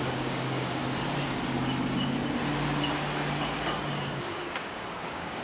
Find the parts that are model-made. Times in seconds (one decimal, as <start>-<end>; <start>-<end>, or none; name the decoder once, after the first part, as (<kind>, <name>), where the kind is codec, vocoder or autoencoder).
0.0-0.8 (codec, DAC); 3.9-5.4